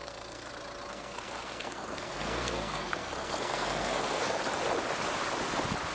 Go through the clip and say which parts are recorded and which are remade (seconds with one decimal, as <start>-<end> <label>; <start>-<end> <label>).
0.0-0.5 remade; 0.5-0.9 recorded; 0.9-4.4 remade; 4.4-5.9 recorded